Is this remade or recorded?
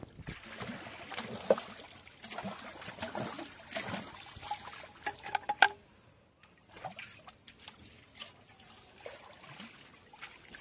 recorded